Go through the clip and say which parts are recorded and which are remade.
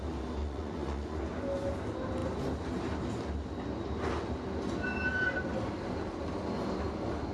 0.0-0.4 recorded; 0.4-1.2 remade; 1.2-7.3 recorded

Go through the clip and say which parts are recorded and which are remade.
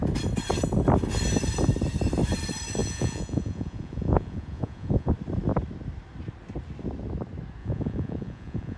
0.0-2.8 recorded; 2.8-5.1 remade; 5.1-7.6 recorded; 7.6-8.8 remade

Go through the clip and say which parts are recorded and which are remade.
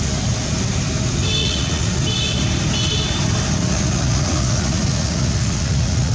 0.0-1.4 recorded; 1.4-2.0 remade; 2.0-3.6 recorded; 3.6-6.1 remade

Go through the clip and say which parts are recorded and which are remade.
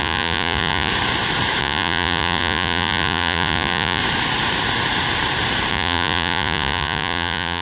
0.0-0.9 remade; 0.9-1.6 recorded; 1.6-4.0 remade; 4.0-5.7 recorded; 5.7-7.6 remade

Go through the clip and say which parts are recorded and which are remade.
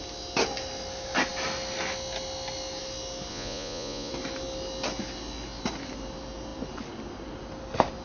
0.0-3.3 recorded; 3.3-4.1 remade; 4.1-8.0 recorded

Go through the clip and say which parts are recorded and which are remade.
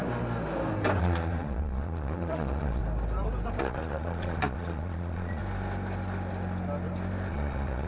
0.0-1.0 recorded; 1.0-2.8 remade; 2.8-3.6 recorded; 3.6-5.4 remade; 5.4-7.3 recorded; 7.3-7.9 remade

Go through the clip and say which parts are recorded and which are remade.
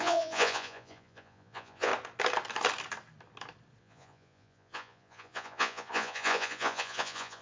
0.0-1.9 remade; 1.9-3.8 recorded; 3.8-7.4 remade